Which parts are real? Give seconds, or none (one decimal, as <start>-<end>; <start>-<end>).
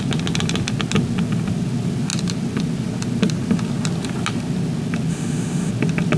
0.0-5.1; 5.7-6.2